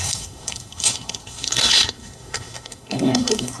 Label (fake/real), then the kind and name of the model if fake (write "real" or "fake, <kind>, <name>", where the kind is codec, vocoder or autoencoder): fake, codec, SNAC